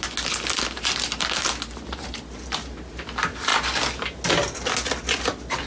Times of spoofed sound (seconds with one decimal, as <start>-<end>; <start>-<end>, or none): none